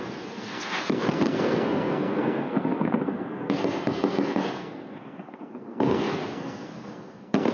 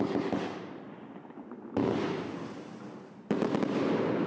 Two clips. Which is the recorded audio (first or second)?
second